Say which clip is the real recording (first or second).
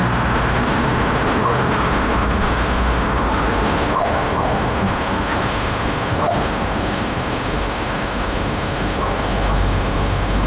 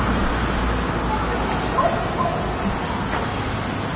second